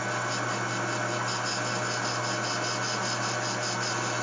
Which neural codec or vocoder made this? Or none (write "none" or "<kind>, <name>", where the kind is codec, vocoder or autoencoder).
none